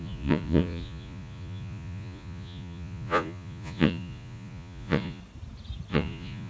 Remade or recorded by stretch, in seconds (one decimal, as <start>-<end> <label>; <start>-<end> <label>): 0.0-5.2 remade; 5.2-5.9 recorded; 5.9-6.5 remade